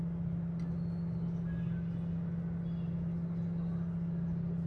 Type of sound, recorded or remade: recorded